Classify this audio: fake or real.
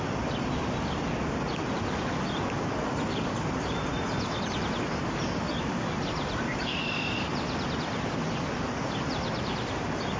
real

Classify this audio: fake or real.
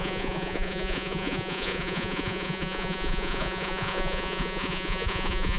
fake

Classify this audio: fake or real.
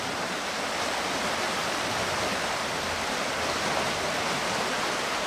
real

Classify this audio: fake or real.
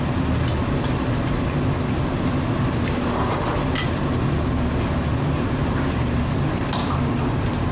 real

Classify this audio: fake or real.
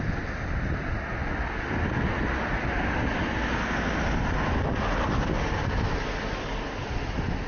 real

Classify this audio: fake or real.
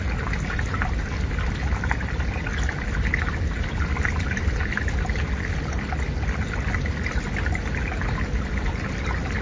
real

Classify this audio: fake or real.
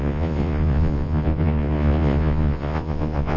fake